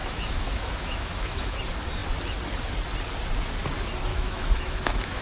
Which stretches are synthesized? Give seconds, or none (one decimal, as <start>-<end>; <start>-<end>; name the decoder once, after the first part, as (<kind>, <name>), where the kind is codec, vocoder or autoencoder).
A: 0.0-1.6 (autoencoder, DAC-VAE); 4.1-5.2